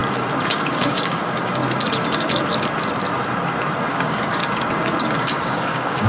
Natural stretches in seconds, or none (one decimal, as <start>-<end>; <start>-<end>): 0.0-0.5; 1.6-3.8; 4.4-5.2